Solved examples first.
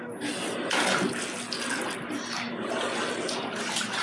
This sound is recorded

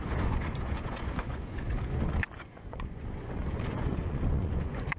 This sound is remade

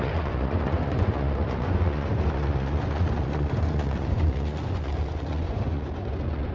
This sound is remade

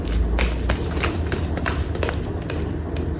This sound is recorded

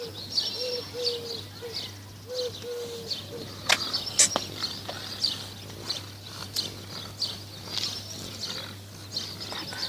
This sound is recorded